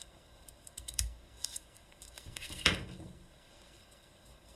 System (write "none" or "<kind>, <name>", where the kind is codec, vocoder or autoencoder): codec, SNAC